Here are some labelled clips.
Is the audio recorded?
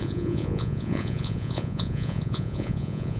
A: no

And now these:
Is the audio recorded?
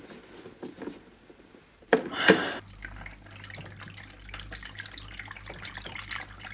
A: yes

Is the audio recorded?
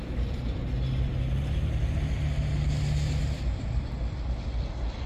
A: yes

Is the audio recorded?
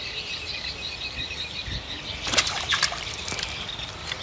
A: no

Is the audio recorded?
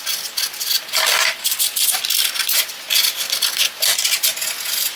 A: yes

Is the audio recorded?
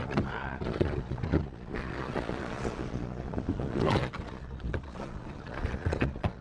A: no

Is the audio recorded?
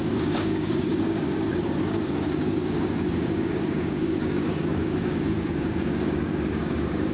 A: no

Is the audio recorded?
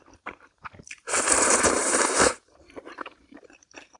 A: no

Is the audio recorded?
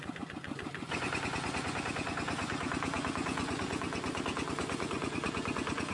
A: no